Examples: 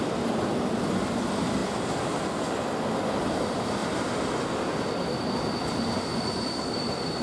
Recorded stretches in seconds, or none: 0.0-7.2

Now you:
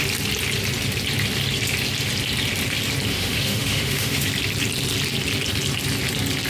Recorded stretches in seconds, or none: 0.0-3.1; 4.3-6.5

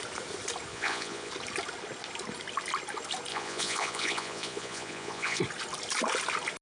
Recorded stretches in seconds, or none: 0.0-0.7; 1.3-3.3; 5.4-6.6

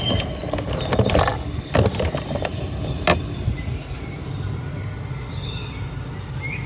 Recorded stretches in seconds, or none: 0.0-6.7